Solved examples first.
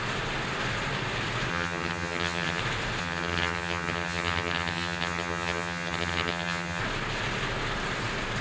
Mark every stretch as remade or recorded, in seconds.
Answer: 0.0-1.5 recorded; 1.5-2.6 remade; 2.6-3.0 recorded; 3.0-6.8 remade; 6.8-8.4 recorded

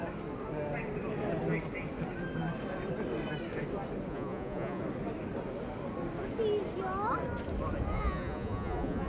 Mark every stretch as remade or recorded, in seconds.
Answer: 0.0-4.1 recorded; 4.1-4.8 remade; 4.8-7.9 recorded; 7.9-9.1 remade

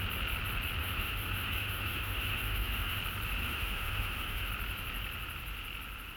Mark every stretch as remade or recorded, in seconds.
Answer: 0.0-0.8 recorded; 0.8-3.0 remade; 3.0-3.4 recorded; 3.4-4.5 remade; 4.5-6.2 recorded

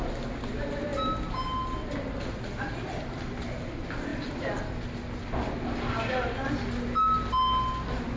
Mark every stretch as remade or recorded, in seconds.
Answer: 0.0-8.2 recorded

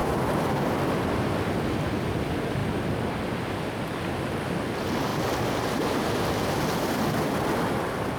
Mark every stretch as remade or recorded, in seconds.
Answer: 0.0-8.2 recorded

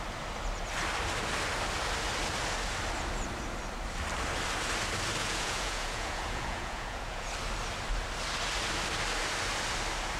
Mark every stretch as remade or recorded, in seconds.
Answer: 0.0-5.2 recorded; 5.2-7.3 remade; 7.3-10.2 recorded

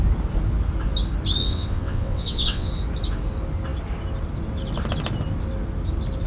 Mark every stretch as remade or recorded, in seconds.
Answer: 0.0-1.4 recorded; 1.4-2.7 remade; 2.7-6.3 recorded